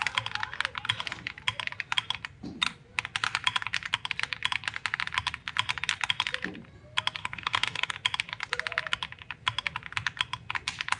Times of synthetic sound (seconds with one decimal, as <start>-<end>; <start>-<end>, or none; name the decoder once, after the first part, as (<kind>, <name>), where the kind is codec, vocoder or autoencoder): 7.2-7.9 (codec, DAC)